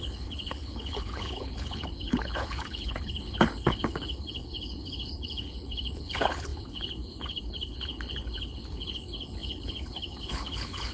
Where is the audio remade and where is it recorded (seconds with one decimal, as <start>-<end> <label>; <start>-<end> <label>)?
0.0-10.9 remade